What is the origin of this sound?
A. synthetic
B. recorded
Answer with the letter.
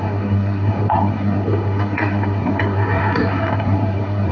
A